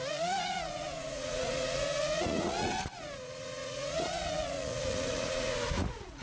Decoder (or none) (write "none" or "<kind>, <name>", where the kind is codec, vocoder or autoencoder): vocoder, Vocos